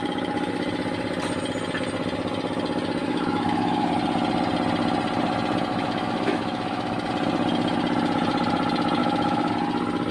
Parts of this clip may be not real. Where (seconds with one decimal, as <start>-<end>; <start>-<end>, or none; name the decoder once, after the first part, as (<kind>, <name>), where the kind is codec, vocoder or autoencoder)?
3.0-3.9 (autoencoder, DAC-VAE); 5.7-7.1; 9.0-9.5